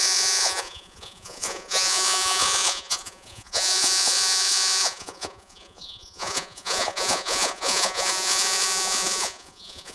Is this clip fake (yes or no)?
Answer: yes